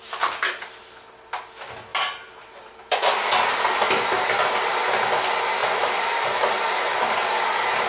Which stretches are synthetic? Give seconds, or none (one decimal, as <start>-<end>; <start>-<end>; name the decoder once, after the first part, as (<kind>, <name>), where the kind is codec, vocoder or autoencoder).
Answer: 1.9-3.3 (vocoder, BigVGAN v2)